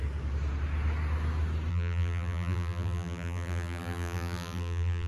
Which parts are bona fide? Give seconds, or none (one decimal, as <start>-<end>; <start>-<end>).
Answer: 0.0-1.7